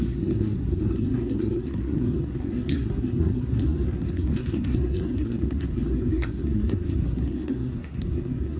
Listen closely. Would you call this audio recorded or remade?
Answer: remade